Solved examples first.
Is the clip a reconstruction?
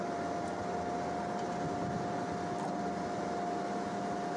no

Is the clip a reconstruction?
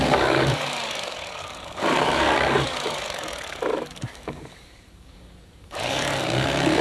yes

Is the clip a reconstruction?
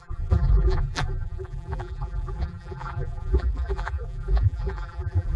yes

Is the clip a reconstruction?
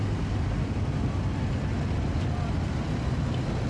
no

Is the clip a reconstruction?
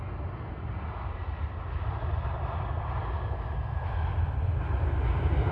no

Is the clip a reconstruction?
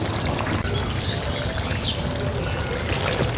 no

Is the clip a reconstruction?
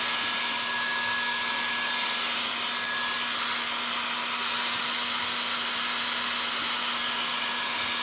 no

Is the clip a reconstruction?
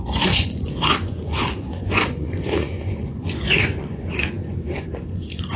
yes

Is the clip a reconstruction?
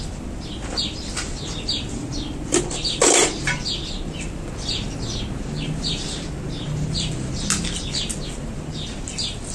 no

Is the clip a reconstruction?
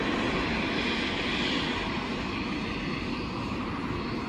no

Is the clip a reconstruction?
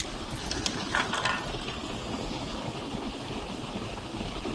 no